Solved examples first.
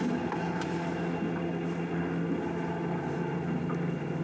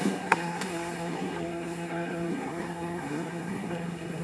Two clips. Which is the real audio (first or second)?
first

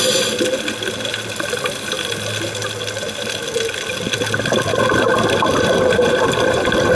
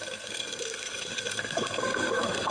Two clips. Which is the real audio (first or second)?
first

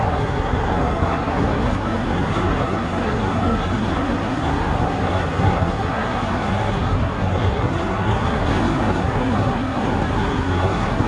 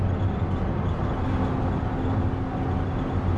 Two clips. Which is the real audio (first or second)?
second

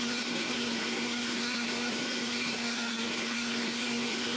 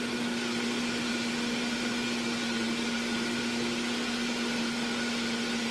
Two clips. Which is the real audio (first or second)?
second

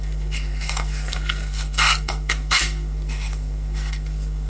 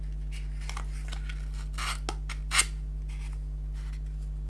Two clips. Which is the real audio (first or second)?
second